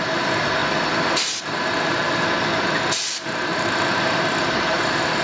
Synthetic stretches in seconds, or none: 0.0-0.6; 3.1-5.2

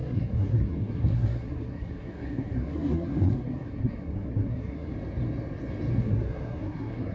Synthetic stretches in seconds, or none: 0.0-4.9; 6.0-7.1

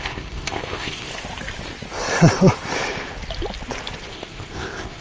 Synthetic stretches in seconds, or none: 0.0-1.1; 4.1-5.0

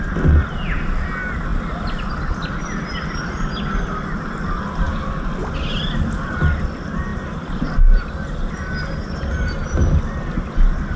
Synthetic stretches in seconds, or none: none

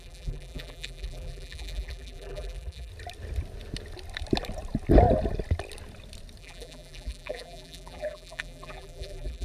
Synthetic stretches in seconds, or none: 0.0-2.9; 6.4-9.4